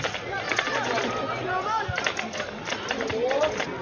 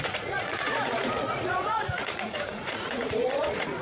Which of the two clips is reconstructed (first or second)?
second